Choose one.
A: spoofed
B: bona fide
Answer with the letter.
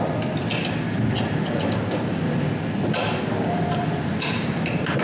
B